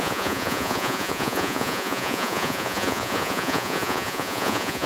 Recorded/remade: remade